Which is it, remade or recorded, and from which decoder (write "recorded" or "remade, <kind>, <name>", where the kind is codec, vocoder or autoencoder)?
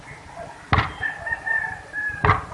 remade, vocoder, BigVGAN v2